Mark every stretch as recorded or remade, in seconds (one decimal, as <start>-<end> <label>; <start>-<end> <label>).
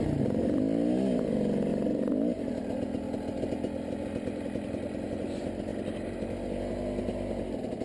0.0-7.8 recorded